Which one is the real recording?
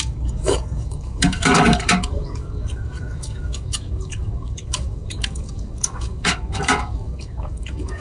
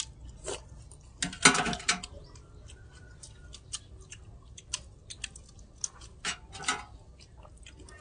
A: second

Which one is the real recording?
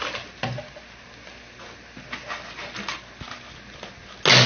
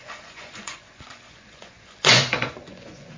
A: first